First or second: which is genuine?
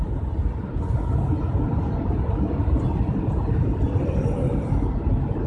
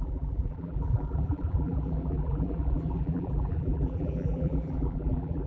first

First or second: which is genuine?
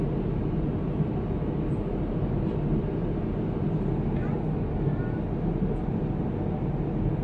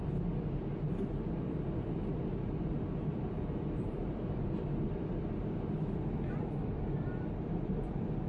first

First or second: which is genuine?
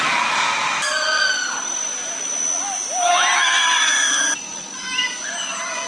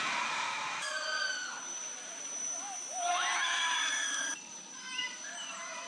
first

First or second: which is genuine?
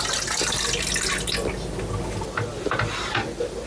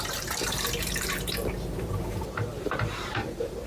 first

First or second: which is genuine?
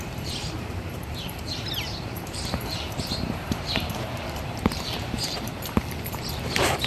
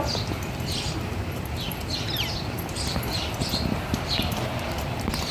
second